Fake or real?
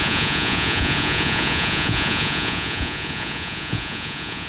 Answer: fake